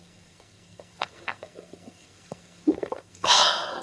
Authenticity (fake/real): fake